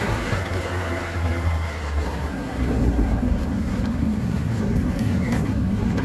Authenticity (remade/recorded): remade